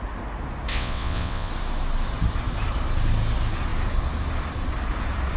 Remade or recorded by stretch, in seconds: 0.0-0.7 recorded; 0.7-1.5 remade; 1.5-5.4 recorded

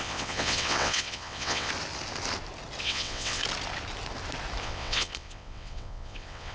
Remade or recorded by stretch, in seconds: 0.0-1.7 remade; 1.7-2.8 recorded; 2.8-3.4 remade; 3.4-4.6 recorded; 4.6-6.5 remade

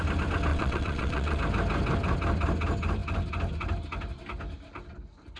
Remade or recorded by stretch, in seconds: 0.0-0.5 recorded; 0.5-1.4 remade; 1.4-5.4 recorded